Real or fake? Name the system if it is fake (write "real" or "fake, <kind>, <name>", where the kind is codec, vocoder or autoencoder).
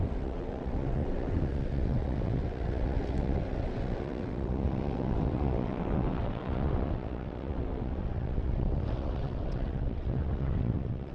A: fake, vocoder, WaveNeXt